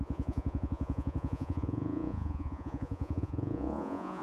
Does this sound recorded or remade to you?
remade